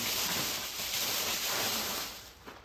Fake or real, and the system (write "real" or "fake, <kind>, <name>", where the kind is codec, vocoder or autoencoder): fake, vocoder, BigVGAN v2